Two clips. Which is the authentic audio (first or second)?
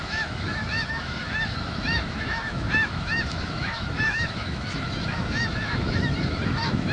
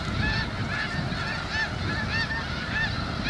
second